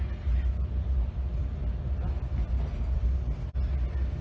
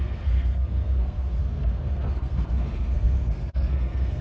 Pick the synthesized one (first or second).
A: second